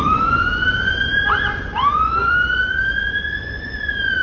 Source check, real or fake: fake